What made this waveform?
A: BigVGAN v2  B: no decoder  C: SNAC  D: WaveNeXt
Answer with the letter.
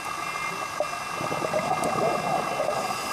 B